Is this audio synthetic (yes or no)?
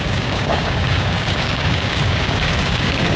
yes